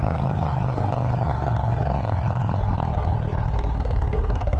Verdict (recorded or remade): remade